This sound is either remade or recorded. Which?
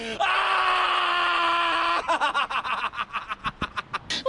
recorded